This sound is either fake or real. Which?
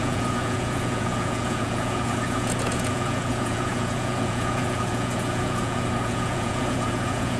fake